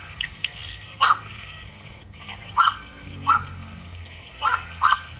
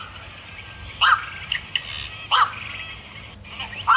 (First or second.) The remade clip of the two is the first